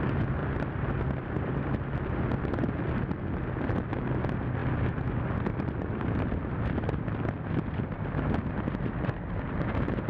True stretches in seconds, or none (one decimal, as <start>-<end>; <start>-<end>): 0.0-0.4; 3.9-4.6; 6.5-10.1